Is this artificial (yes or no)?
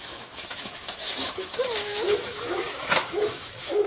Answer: yes